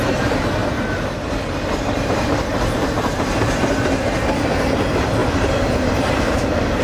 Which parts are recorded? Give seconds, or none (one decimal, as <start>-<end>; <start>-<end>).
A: 0.0-0.6; 4.1-5.2